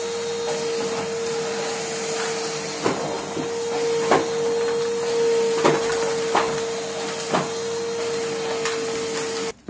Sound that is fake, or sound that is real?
real